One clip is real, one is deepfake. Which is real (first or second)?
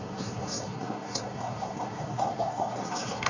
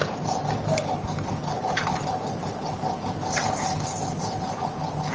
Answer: second